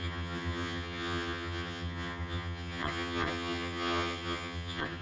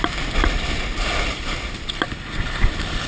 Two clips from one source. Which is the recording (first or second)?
second